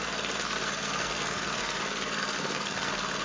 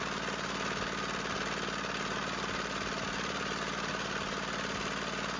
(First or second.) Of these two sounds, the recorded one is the second